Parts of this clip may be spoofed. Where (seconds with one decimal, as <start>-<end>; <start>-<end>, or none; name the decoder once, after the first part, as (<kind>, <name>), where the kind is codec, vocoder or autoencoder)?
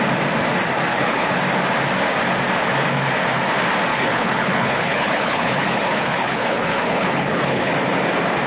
0.9-1.4 (codec, HILCodec); 3.9-7.7